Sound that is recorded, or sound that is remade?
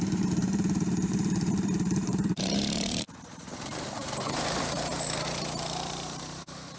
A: remade